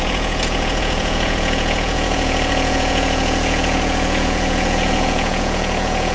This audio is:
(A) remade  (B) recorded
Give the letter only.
A